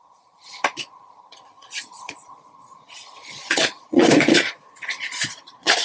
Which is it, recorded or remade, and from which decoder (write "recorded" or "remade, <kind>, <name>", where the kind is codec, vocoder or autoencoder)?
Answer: remade, vocoder, Vocos